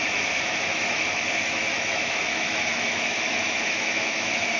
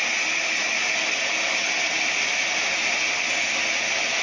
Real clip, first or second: second